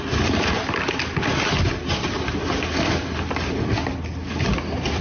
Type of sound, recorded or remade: recorded